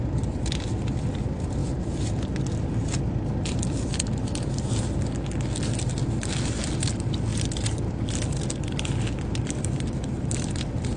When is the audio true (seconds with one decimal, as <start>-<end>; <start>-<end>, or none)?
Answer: 1.6-5.5; 6.0-6.8; 7.3-8.1